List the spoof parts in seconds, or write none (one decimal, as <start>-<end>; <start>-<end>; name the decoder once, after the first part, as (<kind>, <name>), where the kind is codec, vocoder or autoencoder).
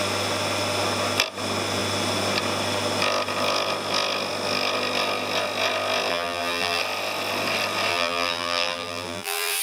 6.1-6.8 (vocoder, BigVGAN v2); 7.9-9.6